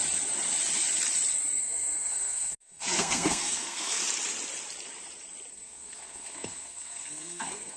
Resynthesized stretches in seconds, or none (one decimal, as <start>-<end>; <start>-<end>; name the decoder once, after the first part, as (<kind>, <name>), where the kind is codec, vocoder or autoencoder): 1.6-4.0 (codec, SNAC); 5.5-7.8